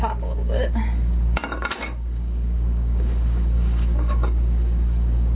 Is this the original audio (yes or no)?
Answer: no